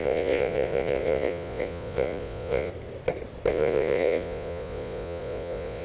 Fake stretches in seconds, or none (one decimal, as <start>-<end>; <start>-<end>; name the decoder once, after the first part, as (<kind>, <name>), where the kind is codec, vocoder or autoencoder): 0.0-2.7 (vocoder, Vocos); 3.5-5.8